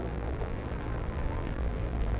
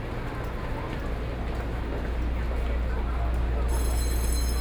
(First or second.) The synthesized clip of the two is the first